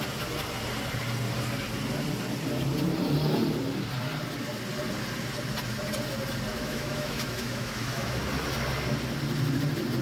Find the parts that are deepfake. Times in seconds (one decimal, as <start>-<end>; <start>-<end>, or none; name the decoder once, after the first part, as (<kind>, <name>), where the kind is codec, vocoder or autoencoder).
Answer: 6.5-8.2 (autoencoder, DAC-VAE)